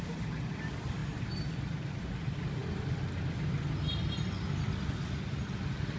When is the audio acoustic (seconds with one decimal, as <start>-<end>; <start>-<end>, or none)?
0.0-6.0